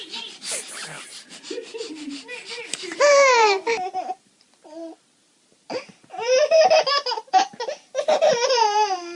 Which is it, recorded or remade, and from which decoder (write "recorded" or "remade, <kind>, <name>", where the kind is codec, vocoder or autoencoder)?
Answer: remade, vocoder, BigVGAN v2